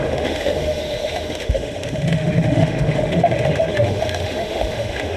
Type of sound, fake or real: fake